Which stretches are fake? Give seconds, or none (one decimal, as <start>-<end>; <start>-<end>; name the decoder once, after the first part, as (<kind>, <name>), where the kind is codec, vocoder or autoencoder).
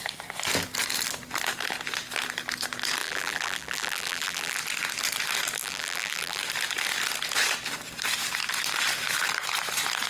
3.0-4.6 (vocoder, BigVGAN v2); 5.6-6.4